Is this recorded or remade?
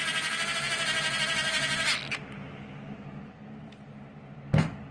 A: recorded